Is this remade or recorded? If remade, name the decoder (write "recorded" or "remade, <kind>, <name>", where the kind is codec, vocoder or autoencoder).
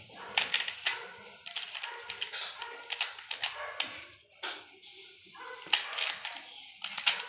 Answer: recorded